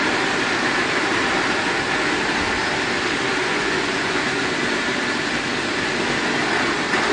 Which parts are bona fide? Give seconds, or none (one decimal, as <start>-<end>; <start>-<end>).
0.0-3.4; 4.4-7.1